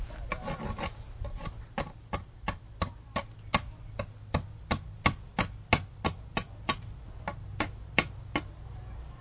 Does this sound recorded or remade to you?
recorded